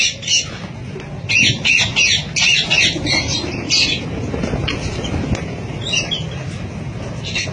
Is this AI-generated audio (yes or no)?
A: no